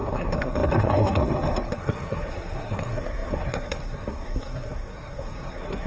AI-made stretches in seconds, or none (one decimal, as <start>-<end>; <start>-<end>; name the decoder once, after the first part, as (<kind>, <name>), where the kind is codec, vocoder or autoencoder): 0.0-5.9 (codec, SNAC)